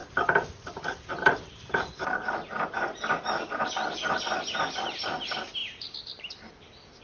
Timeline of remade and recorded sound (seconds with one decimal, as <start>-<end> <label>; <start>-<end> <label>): 0.0-7.0 recorded